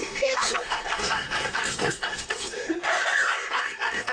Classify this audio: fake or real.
fake